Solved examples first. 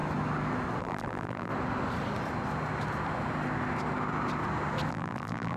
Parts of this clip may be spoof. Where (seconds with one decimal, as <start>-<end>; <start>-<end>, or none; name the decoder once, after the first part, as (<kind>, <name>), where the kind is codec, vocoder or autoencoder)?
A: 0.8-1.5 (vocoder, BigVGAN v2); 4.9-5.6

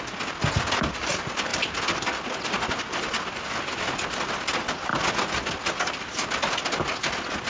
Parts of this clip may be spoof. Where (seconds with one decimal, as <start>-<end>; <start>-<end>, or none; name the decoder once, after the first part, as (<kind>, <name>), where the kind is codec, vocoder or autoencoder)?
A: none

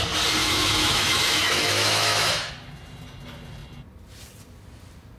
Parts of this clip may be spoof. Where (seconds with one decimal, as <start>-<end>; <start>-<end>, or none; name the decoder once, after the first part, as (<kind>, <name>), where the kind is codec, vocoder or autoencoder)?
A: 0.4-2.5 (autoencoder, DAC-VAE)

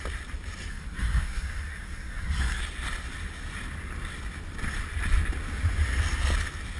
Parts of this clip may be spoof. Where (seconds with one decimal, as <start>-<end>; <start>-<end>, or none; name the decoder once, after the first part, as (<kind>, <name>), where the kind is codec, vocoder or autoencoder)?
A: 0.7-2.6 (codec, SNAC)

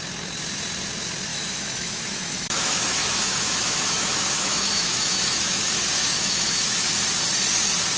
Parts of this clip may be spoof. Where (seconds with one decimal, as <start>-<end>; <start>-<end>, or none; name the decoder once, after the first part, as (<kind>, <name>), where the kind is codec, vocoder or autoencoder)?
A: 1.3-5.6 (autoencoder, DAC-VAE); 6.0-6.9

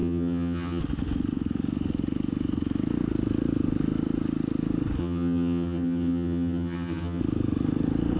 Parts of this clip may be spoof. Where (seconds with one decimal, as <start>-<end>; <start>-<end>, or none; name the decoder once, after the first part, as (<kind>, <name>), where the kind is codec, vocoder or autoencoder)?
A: 0.0-0.8 (vocoder, HiFi-GAN); 5.0-7.2

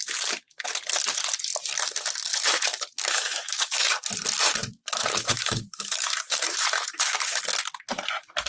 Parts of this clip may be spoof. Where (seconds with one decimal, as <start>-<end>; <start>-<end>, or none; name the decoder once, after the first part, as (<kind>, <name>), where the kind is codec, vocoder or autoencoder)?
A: 2.3-3.9 (autoencoder, DAC-VAE); 4.6-7.4